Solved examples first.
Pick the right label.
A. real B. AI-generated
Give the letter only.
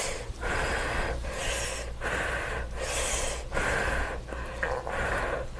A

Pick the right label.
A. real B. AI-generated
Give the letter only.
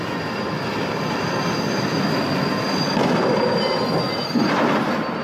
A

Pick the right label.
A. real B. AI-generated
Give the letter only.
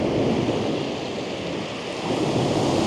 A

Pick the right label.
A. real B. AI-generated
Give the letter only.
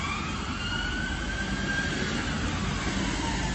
A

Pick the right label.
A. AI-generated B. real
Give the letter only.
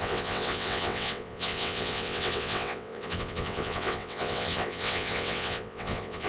A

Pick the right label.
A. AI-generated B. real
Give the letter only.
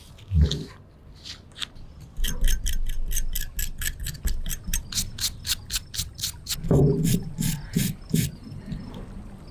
B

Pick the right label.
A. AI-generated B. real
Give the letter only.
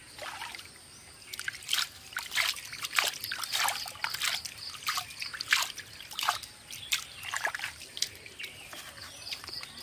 B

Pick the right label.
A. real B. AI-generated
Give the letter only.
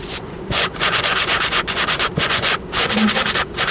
B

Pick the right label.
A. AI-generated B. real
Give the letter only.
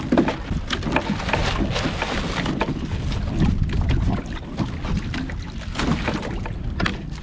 B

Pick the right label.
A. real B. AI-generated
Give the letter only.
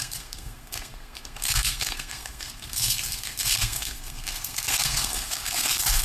B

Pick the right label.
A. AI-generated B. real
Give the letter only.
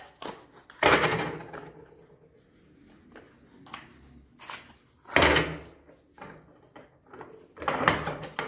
B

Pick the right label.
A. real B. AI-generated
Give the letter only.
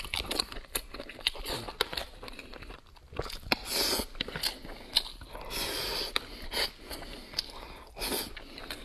A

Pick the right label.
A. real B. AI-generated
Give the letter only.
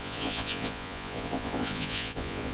B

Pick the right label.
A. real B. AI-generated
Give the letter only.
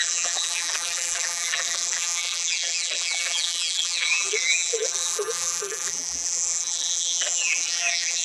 B